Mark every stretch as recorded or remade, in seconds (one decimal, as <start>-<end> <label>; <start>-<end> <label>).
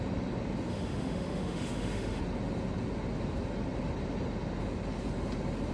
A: 0.0-0.7 recorded; 0.7-2.2 remade; 2.2-5.7 recorded